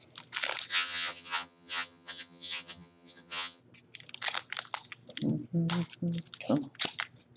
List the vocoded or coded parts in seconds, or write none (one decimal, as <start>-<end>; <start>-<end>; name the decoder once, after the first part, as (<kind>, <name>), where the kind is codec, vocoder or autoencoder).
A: 0.7-3.6 (vocoder, HiFi-GAN)